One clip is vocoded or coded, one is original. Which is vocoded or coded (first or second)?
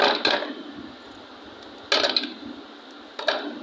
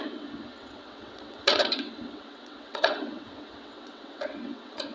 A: second